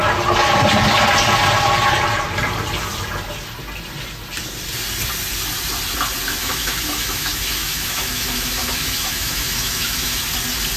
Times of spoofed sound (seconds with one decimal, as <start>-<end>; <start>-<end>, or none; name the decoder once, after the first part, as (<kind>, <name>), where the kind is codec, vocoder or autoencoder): 6.4-10.2 (autoencoder, DAC-VAE)